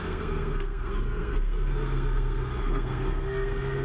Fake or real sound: fake